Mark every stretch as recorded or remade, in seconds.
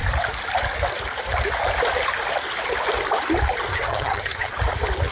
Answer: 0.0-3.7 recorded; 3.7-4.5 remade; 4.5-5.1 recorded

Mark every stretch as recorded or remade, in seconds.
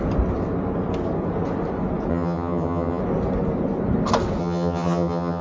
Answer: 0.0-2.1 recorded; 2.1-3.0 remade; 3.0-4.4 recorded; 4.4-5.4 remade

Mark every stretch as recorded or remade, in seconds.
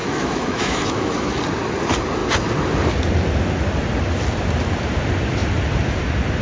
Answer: 0.0-1.4 remade; 1.4-6.4 recorded